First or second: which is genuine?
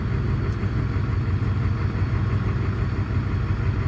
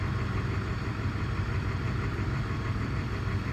first